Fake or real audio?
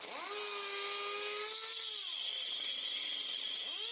real